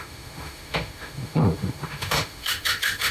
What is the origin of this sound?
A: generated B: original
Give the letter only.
A